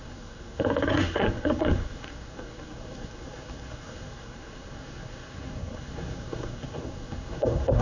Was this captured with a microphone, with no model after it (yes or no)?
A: no